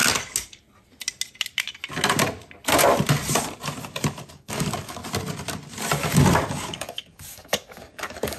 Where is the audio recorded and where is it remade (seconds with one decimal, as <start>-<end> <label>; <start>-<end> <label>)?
0.0-4.3 recorded; 4.3-5.0 remade; 5.0-6.5 recorded; 6.5-8.4 remade